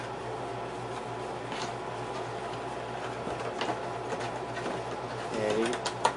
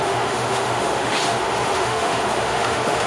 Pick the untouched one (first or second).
first